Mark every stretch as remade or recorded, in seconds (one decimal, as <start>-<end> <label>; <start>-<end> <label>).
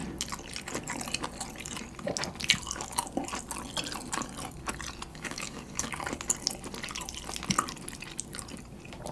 0.0-5.1 recorded; 5.1-6.1 remade; 6.1-9.1 recorded